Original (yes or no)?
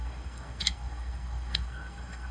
no